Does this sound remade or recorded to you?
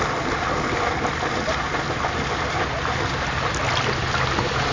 recorded